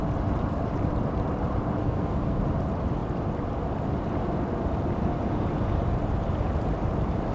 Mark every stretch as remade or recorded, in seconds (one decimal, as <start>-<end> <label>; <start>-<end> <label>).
0.0-1.8 recorded; 1.8-2.4 remade; 2.4-7.3 recorded